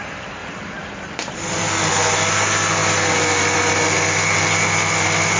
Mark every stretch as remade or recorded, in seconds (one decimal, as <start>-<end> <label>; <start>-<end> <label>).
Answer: 0.0-5.4 recorded